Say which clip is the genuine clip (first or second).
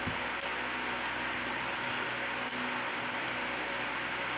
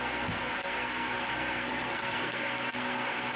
first